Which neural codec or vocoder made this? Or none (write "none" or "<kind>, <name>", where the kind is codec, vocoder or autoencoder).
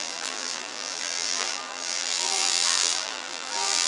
vocoder, BigVGAN v2